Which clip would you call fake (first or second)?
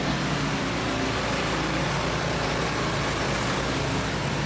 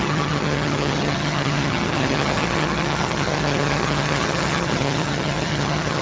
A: second